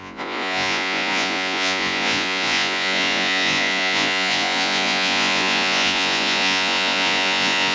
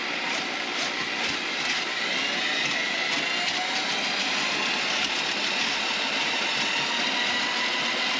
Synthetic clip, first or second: first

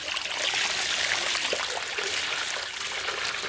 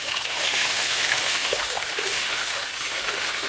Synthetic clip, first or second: second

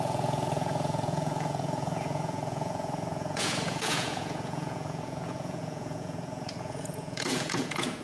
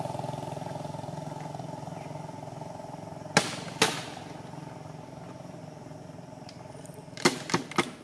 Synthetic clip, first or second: first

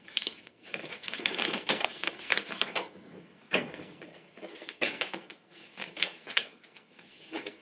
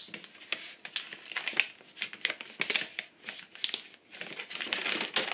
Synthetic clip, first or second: first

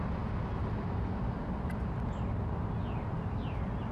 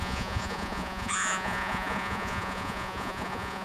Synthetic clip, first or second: second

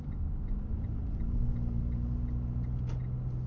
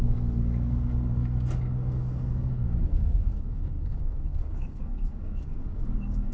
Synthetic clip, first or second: second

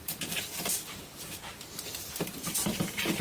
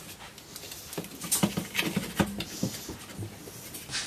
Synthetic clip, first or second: first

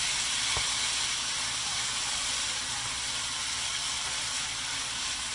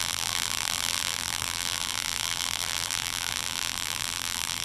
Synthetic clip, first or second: second